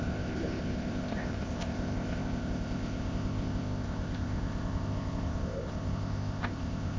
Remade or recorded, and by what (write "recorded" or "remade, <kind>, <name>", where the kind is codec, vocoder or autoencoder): remade, codec, ZipCodec